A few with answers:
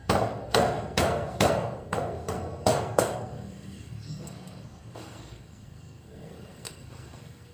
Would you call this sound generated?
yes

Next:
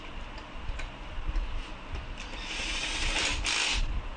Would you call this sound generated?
no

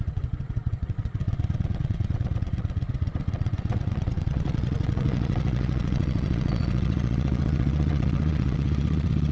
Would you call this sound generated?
yes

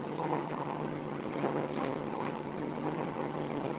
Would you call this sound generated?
yes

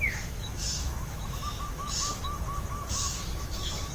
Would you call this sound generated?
yes